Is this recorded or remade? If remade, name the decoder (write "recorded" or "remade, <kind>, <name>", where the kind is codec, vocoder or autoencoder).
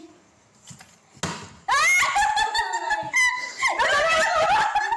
recorded